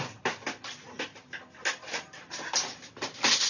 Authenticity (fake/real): real